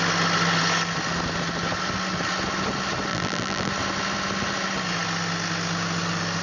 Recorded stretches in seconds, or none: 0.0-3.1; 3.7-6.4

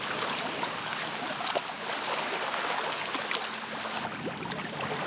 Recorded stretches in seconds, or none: 0.0-5.1